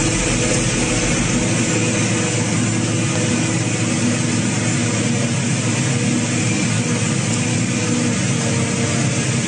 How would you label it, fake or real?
real